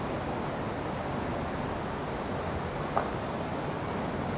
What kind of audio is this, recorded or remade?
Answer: recorded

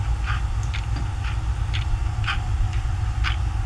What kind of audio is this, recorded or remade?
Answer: recorded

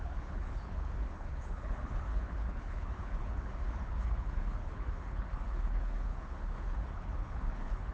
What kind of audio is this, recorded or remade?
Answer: remade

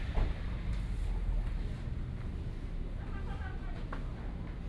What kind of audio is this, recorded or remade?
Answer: recorded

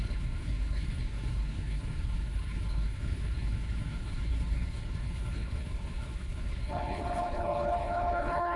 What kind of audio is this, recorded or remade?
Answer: remade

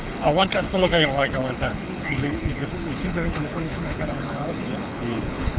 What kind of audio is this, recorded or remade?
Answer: remade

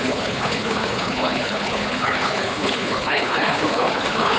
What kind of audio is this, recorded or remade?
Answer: remade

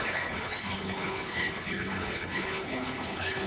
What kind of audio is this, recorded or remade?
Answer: remade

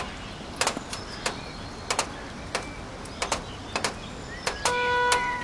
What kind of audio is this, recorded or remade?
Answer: recorded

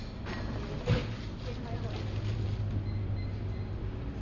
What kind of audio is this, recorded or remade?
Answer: recorded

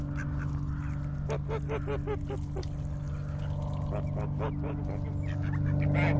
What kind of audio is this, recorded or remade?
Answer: recorded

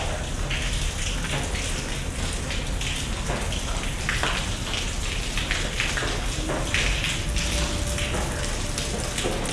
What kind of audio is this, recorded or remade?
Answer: recorded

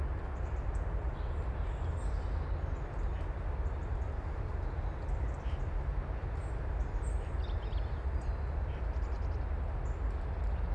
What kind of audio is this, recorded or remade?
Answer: recorded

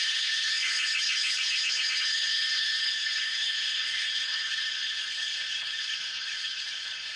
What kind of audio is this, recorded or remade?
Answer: remade